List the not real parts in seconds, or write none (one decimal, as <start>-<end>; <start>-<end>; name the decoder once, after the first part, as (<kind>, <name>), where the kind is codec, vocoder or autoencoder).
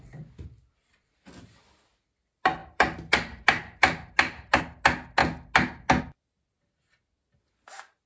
2.6-4.6 (vocoder, BigVGAN v2)